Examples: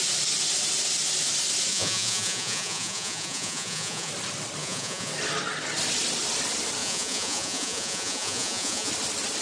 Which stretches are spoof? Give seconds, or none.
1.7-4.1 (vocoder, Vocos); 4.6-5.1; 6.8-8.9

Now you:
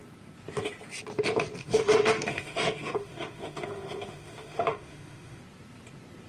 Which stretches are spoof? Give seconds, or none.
1.6-5.4 (autoencoder, DAC-VAE)